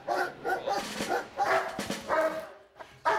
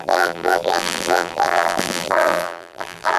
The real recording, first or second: first